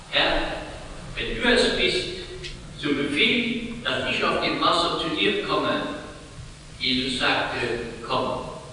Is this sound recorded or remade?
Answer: remade